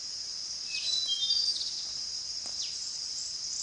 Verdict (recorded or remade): recorded